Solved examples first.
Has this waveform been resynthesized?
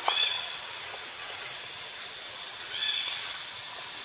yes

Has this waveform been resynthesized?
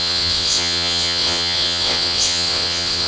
yes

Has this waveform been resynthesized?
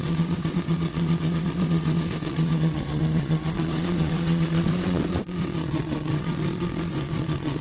yes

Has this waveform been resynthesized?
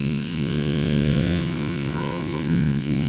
yes